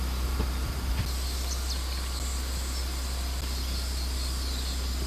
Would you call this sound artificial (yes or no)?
no